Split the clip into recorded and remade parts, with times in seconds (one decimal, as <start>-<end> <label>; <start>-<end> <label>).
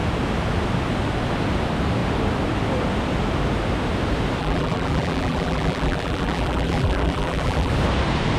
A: 0.0-4.4 recorded; 4.4-7.7 remade; 7.7-8.4 recorded